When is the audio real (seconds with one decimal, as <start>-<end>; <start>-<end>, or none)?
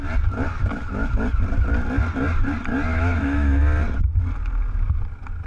0.0-2.9; 3.6-5.5